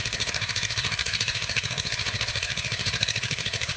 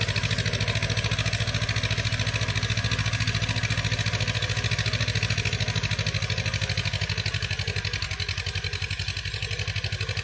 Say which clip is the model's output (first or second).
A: first